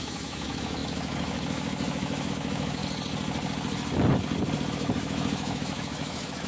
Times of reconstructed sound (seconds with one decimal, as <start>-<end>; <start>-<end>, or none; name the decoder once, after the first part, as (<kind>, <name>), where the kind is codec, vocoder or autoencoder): 0.0-2.8 (autoencoder, DAC-VAE); 4.7-6.5